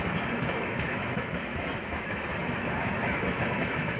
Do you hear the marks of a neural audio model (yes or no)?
yes